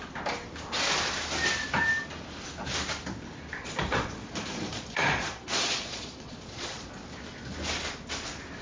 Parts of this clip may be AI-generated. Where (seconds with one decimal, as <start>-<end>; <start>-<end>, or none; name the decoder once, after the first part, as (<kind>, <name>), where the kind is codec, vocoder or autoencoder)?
3.6-6.9 (vocoder, Vocos)